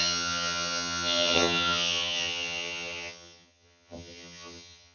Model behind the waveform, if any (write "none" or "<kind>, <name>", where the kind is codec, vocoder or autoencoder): vocoder, HiFi-GAN